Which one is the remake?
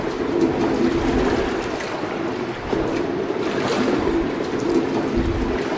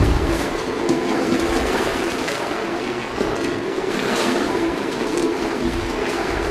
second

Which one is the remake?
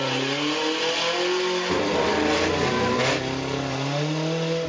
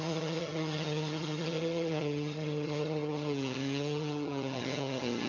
second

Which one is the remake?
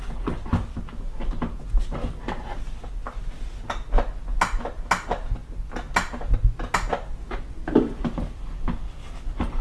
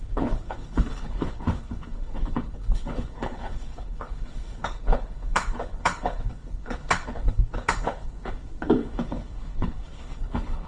second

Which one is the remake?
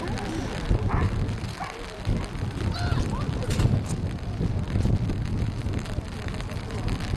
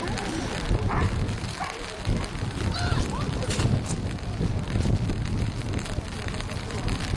second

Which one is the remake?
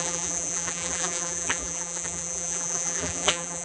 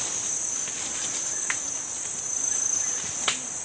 first